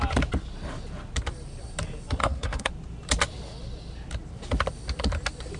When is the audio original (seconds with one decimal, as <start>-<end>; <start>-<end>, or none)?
0.0-2.2; 2.7-5.6